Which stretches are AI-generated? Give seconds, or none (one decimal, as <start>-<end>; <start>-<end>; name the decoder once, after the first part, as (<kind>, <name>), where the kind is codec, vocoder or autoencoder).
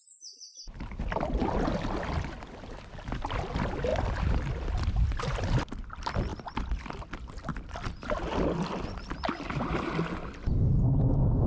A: none